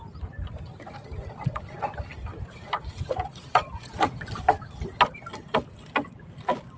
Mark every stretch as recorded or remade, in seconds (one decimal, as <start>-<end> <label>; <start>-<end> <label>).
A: 0.0-6.8 recorded